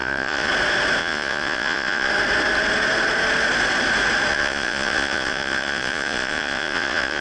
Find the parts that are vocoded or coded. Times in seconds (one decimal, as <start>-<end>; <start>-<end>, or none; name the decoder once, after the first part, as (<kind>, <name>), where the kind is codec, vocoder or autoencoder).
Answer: 0.0-0.5 (vocoder, Vocos); 1.0-2.1; 4.3-7.2